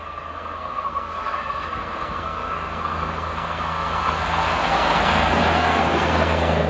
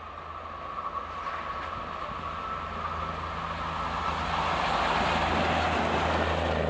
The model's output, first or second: first